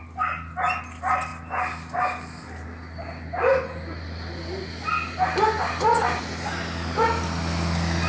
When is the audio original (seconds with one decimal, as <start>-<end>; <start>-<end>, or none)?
0.0-8.1